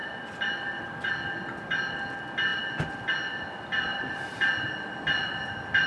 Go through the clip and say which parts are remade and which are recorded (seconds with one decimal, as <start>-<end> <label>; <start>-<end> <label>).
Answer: 0.0-1.0 remade; 1.0-3.9 recorded; 3.9-4.5 remade; 4.5-5.9 recorded